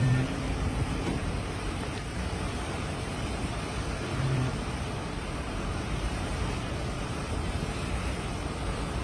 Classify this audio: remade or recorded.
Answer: remade